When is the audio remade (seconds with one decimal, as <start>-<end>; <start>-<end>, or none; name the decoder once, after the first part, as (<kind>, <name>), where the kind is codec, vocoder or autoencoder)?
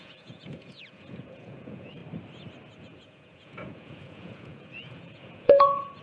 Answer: 0.0-2.0 (vocoder, Vocos); 2.8-6.0